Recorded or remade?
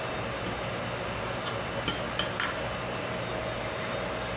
recorded